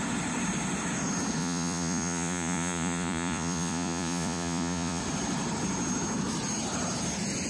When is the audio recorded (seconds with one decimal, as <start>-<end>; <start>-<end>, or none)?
0.0-1.4; 5.0-7.5